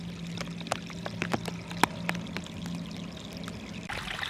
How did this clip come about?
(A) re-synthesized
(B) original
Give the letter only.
B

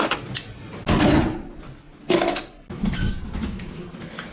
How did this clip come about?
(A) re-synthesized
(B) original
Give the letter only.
B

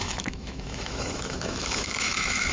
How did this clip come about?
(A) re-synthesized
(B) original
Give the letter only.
A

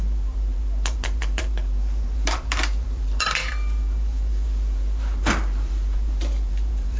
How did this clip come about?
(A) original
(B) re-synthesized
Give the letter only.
B